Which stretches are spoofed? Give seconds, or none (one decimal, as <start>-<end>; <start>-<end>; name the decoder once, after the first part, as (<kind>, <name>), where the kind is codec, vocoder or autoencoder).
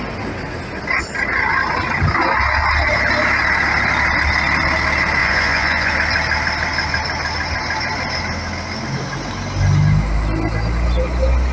5.2-5.9 (vocoder, Vocos)